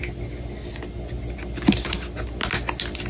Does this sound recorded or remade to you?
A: recorded